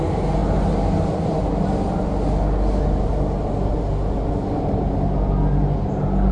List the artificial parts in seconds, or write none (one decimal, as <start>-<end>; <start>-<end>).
none